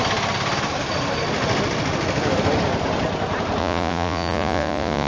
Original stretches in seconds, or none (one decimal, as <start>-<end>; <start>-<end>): 0.0-3.6